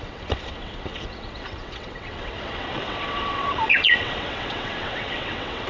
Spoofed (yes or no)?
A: yes